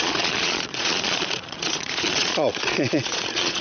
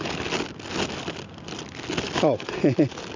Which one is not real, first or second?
first